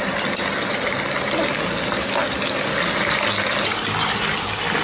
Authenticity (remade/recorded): recorded